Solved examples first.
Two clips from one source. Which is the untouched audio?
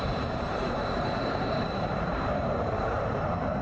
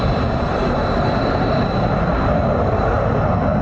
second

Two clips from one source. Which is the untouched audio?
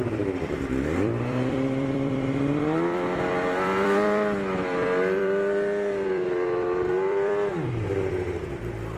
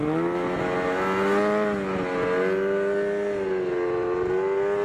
second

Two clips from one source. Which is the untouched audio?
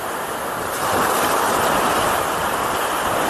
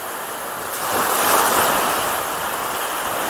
second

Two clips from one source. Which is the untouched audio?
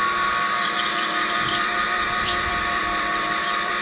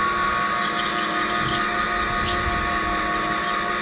second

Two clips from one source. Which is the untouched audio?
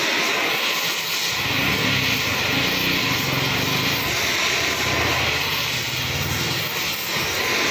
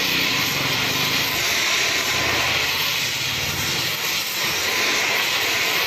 first